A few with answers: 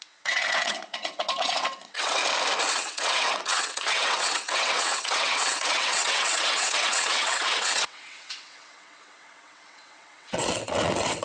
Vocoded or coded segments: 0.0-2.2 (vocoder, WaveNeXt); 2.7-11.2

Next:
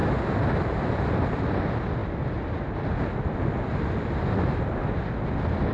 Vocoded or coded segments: none

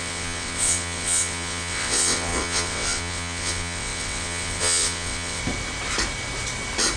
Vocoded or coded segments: 0.0-5.4 (vocoder, WaveNeXt)

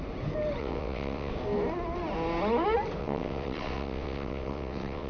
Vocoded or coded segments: 0.6-1.3 (vocoder, WaveNeXt); 3.0-5.1

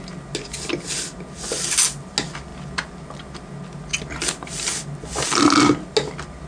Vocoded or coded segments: none